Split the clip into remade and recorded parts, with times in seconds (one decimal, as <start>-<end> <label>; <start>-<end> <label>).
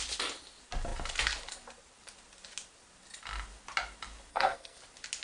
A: 0.0-4.3 recorded; 4.3-4.8 remade; 4.8-5.2 recorded